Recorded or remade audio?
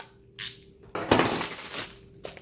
recorded